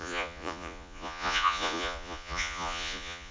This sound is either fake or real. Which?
fake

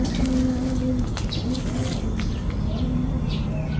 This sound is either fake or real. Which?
real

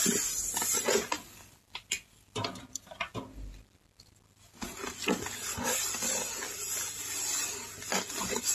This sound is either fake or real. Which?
real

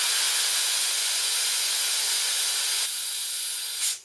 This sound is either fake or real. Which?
fake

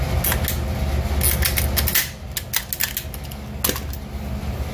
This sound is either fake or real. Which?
real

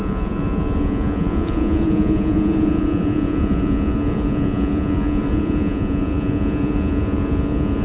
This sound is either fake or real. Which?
fake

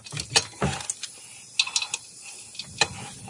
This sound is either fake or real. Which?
real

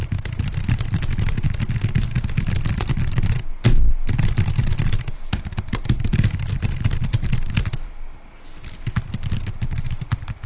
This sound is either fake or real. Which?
real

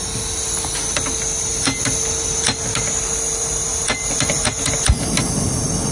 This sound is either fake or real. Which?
real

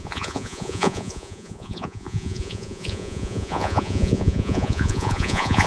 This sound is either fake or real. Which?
fake